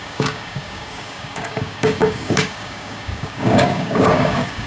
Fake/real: fake